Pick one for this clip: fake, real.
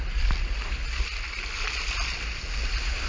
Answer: real